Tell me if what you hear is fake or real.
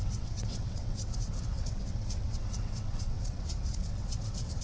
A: fake